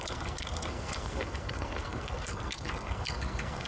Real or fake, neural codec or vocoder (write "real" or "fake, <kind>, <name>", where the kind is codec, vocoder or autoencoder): fake, codec, SNAC